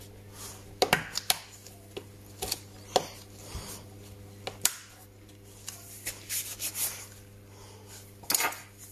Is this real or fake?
real